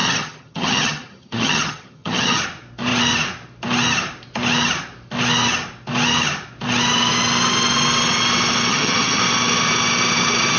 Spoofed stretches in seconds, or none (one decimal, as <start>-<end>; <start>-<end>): 0.0-2.4; 8.7-9.2